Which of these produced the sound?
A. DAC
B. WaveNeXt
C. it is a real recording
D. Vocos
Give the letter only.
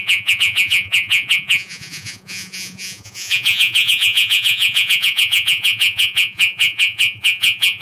D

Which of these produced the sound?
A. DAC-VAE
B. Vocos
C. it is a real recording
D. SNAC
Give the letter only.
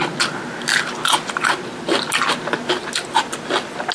C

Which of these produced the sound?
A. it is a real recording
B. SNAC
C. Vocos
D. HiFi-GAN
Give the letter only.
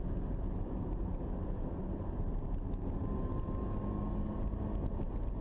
A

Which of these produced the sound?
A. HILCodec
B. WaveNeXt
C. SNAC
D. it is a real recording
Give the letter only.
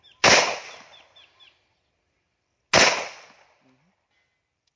D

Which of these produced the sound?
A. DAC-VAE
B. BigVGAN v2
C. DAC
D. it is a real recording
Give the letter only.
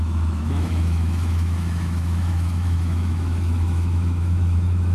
A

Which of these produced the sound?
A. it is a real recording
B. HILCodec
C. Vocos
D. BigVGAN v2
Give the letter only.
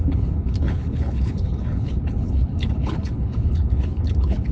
B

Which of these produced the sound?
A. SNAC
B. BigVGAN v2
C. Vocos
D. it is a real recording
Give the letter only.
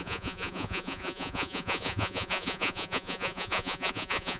C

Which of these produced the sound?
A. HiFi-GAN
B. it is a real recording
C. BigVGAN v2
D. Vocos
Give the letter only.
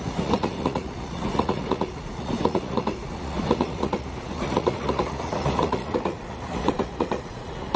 D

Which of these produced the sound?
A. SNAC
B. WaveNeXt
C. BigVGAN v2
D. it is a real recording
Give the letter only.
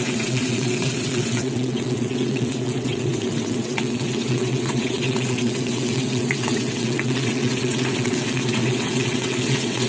B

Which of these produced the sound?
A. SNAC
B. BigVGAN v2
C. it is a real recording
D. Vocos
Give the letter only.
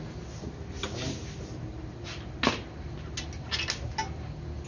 C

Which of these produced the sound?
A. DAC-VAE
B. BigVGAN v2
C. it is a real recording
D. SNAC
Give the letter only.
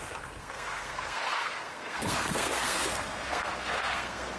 D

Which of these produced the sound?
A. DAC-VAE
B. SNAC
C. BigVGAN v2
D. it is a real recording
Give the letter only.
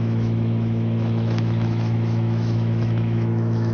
A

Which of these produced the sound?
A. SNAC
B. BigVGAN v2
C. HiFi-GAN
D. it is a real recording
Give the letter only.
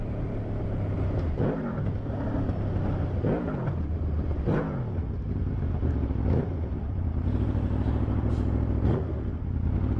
D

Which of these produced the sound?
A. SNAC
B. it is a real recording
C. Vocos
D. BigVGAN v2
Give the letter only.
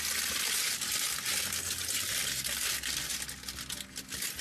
B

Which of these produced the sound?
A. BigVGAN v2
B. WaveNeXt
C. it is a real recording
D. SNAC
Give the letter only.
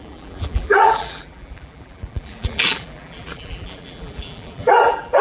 A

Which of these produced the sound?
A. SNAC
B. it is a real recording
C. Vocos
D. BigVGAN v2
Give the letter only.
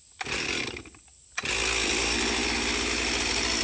B